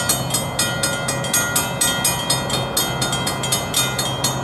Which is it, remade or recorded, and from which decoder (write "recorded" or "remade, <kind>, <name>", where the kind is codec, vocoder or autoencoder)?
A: recorded